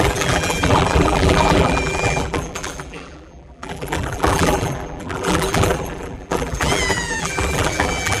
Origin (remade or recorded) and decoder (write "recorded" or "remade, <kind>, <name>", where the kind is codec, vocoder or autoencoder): remade, vocoder, BigVGAN v2